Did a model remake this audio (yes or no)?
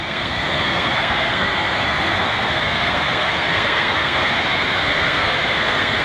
yes